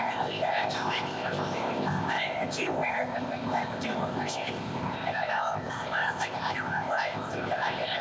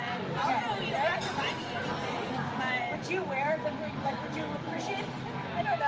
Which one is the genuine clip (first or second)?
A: second